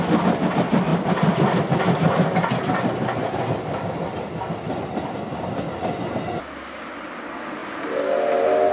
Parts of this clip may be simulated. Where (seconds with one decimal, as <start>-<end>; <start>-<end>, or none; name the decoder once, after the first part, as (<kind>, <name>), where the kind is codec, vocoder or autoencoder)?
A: none